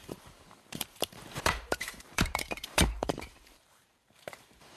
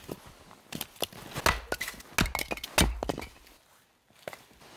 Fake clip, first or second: first